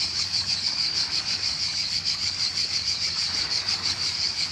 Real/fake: fake